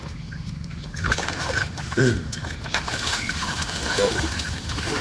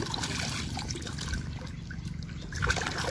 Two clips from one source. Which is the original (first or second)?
second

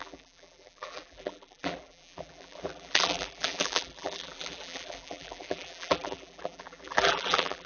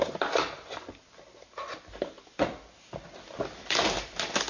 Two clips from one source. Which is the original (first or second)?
second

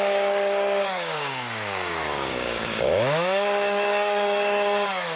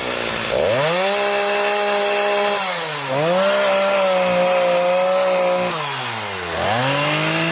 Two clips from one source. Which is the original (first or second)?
second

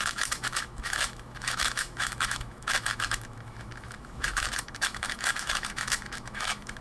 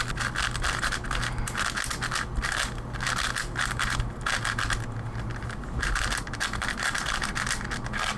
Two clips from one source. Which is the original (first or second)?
second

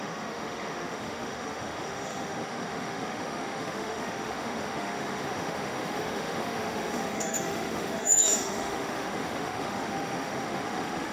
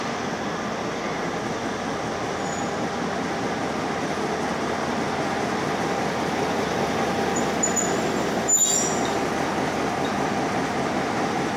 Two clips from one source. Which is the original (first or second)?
second